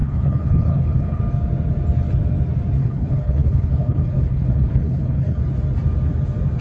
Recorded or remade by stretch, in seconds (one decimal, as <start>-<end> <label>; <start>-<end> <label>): 0.0-1.2 remade; 1.2-2.8 recorded; 2.8-5.4 remade; 5.4-6.6 recorded